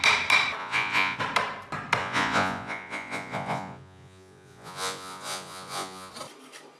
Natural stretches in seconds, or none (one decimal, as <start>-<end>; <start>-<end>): 0.0-0.6; 1.2-2.0; 6.1-6.8